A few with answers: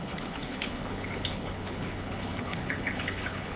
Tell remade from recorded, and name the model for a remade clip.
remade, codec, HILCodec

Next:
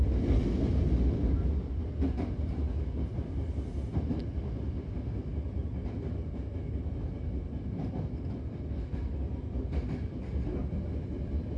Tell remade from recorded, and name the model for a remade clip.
recorded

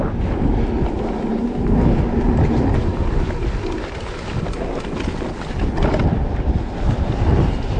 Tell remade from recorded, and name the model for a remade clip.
recorded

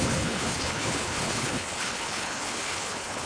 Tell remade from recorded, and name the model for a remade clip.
remade, codec, HILCodec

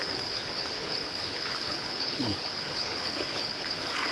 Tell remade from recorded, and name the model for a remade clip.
remade, codec, HILCodec